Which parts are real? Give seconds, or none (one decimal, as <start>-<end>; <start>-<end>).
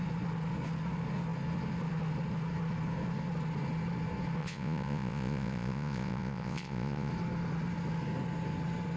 0.0-4.4; 7.1-9.0